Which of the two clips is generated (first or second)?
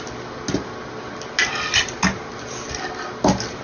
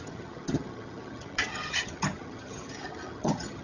second